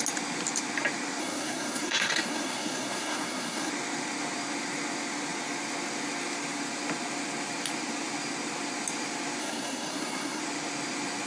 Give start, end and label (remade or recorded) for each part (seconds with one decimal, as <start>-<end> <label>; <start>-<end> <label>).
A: 0.0-1.2 recorded; 1.2-3.7 remade; 3.7-9.4 recorded; 9.4-10.4 remade; 10.4-11.3 recorded